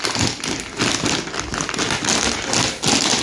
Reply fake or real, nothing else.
real